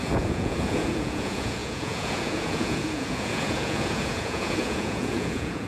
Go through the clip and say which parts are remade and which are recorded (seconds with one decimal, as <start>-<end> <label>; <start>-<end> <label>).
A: 0.0-5.7 remade